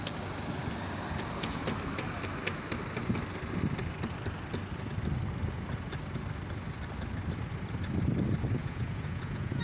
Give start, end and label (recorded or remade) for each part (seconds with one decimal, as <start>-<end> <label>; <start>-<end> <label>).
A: 0.0-8.6 recorded; 8.6-9.6 remade